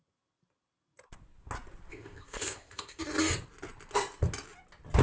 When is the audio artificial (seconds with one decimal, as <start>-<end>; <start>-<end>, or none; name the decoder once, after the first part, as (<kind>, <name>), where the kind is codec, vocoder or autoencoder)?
1.9-3.0 (codec, ZipCodec)